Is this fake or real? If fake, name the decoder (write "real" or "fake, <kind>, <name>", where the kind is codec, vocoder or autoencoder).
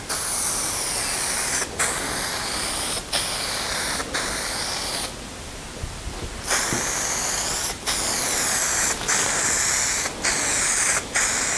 real